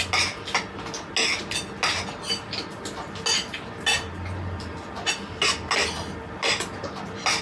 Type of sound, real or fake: real